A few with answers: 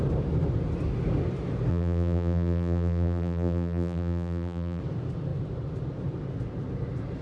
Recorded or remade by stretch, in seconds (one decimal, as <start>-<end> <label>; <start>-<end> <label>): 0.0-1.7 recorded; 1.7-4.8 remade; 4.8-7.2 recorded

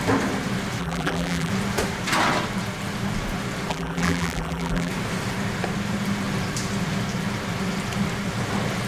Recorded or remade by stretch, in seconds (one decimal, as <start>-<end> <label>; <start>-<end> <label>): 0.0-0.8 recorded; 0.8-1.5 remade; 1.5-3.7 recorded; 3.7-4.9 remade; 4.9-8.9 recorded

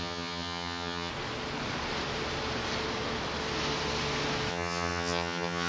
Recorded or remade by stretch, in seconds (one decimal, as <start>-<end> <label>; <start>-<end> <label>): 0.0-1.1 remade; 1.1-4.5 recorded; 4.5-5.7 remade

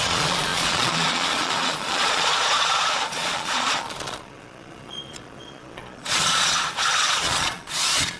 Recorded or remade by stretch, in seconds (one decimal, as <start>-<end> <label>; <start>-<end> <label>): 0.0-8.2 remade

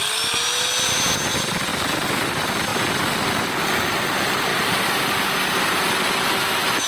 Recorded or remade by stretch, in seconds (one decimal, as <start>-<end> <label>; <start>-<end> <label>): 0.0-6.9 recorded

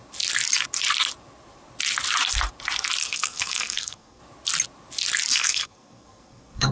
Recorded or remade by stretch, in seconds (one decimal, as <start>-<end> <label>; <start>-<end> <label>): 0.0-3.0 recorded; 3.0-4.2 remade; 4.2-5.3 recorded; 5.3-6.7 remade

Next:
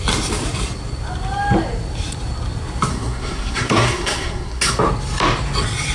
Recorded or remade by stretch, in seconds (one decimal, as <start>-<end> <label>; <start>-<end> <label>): 0.0-2.9 recorded; 2.9-4.8 remade; 4.8-5.9 recorded

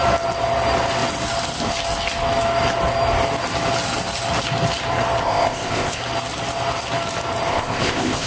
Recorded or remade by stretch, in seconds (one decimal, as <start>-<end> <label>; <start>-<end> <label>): 0.0-5.2 recorded; 5.2-6.0 remade; 6.0-7.5 recorded; 7.5-8.3 remade